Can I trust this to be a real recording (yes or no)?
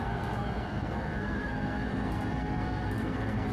no